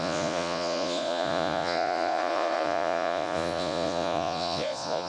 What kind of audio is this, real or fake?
fake